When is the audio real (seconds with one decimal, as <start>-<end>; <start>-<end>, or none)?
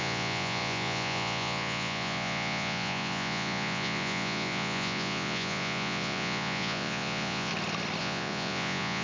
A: 7.5-8.0